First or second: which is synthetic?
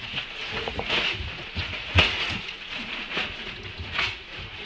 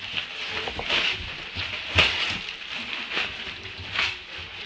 first